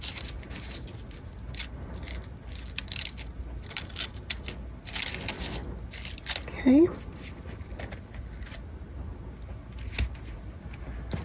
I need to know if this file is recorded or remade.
recorded